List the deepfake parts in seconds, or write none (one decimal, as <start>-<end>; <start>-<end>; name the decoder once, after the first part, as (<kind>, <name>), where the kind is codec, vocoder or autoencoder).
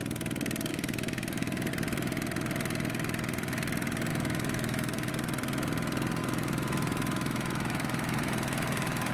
0.7-1.7 (autoencoder, DAC-VAE); 4.1-5.1; 6.2-9.1